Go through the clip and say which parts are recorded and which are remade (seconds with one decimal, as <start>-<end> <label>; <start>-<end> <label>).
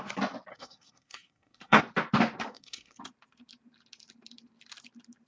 0.0-0.5 recorded; 0.5-1.8 remade; 1.8-2.5 recorded; 2.5-3.0 remade; 3.0-5.3 recorded